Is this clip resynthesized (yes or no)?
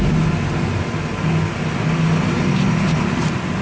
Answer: no